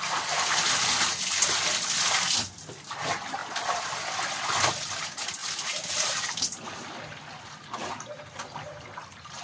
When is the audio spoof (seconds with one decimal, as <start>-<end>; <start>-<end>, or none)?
5.4-6.4; 7.8-9.4